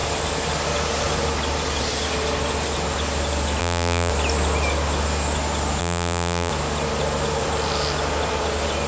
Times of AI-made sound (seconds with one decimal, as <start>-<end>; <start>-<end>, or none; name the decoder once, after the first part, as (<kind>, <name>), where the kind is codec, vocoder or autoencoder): 3.6-4.1 (vocoder, BigVGAN v2); 5.8-6.5